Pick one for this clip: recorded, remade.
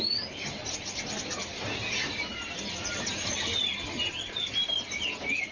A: recorded